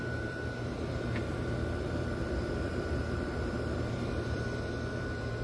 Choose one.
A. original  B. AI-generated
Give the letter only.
B